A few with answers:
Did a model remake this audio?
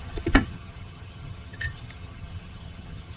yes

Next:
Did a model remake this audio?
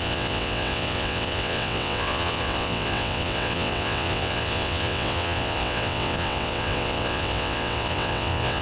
yes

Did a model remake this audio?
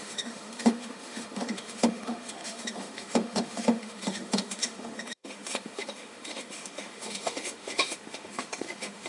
yes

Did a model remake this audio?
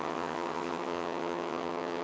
yes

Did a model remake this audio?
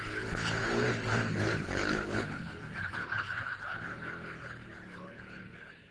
yes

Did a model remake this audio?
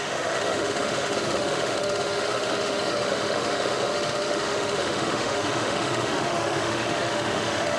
yes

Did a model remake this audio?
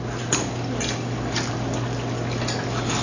no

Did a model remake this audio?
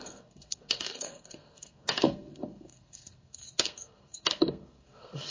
yes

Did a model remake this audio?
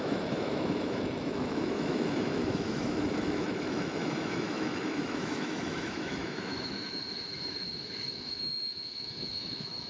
yes